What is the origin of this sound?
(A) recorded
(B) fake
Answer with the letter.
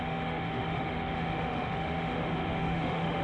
B